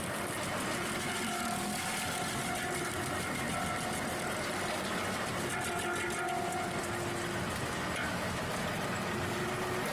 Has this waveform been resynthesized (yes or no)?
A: no